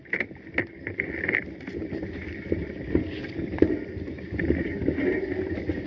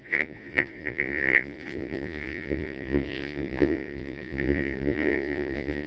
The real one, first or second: first